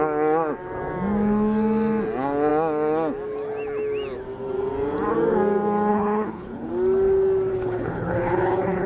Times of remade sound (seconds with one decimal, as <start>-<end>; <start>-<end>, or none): 5.9-6.7; 7.5-8.9